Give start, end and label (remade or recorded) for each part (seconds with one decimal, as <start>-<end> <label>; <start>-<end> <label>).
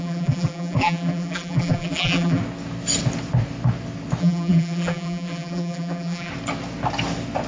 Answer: 0.0-2.4 remade; 2.4-4.2 recorded; 4.2-6.3 remade; 6.3-7.5 recorded